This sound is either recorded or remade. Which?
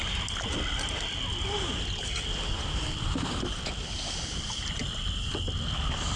recorded